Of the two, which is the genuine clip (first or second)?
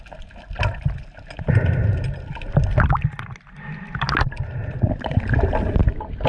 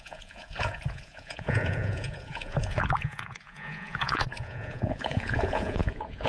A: first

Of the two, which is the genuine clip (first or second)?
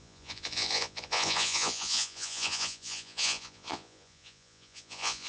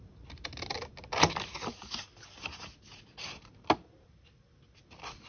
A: second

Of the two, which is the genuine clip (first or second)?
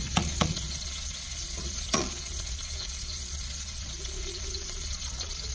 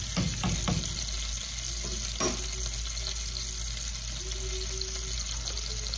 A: second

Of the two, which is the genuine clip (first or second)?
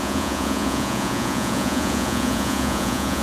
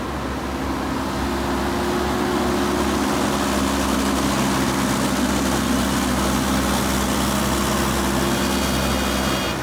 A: second